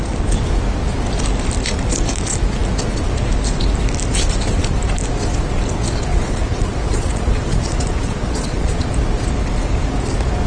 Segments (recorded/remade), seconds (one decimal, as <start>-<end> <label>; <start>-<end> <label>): 0.0-6.1 recorded; 6.1-8.9 remade; 8.9-10.5 recorded